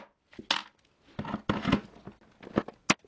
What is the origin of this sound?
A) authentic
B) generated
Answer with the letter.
A